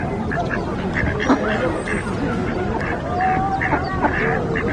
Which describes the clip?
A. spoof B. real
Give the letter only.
B